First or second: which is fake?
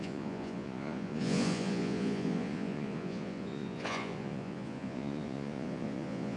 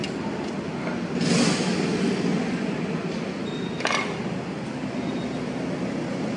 first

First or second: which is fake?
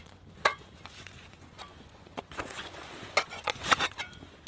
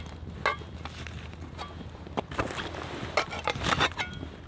first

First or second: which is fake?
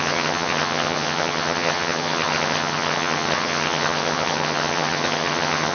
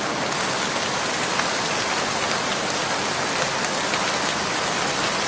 first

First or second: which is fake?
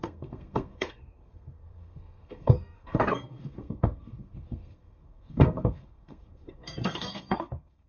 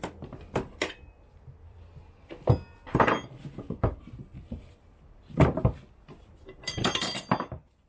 first